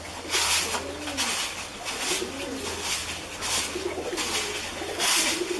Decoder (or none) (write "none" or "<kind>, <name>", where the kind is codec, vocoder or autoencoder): none